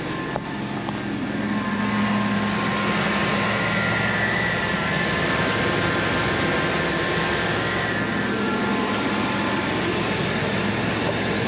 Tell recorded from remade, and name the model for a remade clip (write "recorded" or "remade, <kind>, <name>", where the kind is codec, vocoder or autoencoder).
recorded